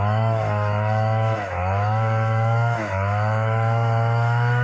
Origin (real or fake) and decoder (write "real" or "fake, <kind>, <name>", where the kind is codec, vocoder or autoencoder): fake, autoencoder, DAC-VAE